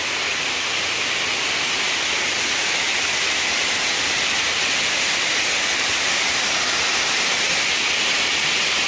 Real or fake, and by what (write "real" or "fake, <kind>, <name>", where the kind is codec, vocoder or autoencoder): real